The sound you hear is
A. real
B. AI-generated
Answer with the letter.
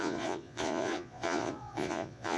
B